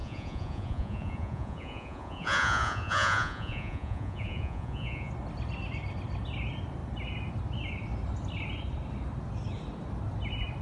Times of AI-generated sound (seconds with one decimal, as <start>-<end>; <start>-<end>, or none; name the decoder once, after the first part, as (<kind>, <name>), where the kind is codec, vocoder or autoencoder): 0.0-5.1 (vocoder, Vocos)